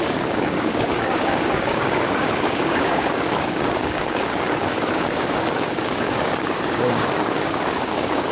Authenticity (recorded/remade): remade